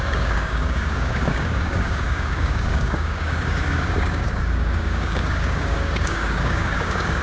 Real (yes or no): no